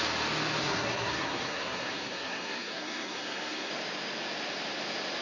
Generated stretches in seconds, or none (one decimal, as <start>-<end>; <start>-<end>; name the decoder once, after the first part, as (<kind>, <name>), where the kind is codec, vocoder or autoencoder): 0.6-3.7 (codec, SNAC)